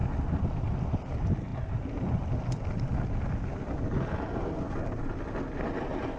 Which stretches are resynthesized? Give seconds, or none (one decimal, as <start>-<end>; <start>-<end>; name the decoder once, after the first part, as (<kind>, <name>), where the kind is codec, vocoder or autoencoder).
none